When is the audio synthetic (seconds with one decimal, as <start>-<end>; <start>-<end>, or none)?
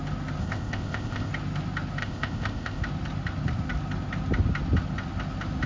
0.4-1.3; 2.0-2.8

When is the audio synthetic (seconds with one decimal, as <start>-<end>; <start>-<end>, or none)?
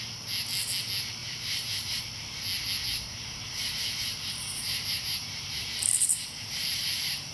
1.2-2.0; 2.9-7.3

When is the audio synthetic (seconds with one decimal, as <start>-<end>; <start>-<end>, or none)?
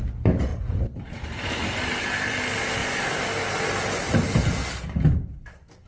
none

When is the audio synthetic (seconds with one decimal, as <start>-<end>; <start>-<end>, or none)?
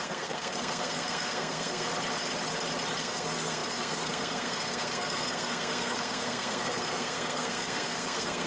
0.0-1.9; 3.0-8.5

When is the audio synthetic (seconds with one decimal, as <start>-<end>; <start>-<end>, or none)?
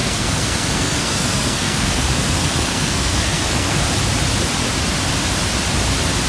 0.0-3.8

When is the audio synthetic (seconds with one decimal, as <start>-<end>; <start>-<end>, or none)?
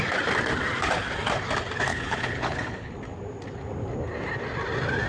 1.9-2.9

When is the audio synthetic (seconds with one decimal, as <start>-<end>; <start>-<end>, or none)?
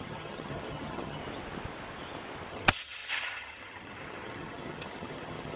0.0-1.2; 2.5-5.6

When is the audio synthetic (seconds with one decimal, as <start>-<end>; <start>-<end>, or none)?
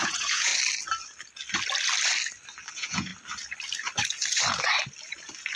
0.0-0.5; 2.7-3.1